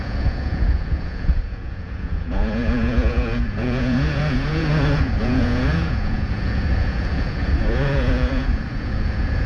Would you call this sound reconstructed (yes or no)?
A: yes